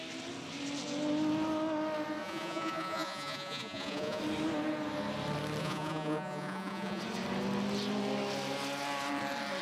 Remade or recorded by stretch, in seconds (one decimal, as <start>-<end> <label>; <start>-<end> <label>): 0.0-2.2 recorded; 2.2-4.2 remade; 4.2-5.6 recorded; 5.6-7.0 remade; 7.0-9.6 recorded